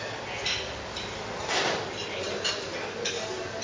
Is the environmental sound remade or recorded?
recorded